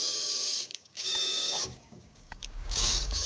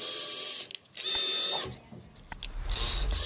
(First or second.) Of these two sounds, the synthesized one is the first